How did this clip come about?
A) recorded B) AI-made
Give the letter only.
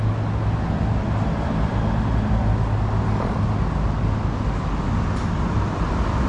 A